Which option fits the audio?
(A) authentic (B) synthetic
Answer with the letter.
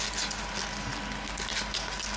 A